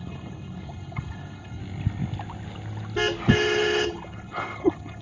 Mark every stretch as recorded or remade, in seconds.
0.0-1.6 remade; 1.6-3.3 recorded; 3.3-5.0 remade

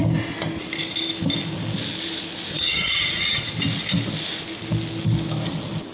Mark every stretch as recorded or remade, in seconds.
0.0-2.5 recorded; 2.5-3.5 remade; 3.5-5.9 recorded

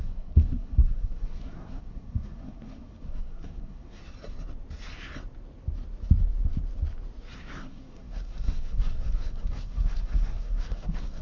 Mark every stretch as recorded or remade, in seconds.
0.0-4.0 remade; 4.0-7.4 recorded; 7.4-11.2 remade

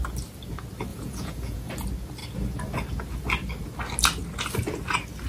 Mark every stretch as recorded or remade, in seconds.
0.0-0.9 recorded; 0.9-1.7 remade; 1.7-5.3 recorded

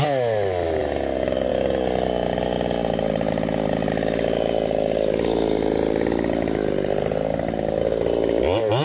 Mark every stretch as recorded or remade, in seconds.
0.0-8.8 recorded

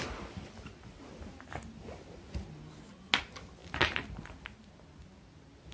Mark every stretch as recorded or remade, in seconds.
0.0-5.7 recorded

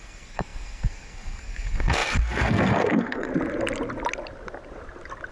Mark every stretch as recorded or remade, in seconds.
0.0-3.3 remade; 3.3-5.3 recorded

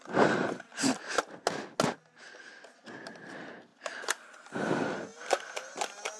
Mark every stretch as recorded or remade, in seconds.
0.0-6.2 recorded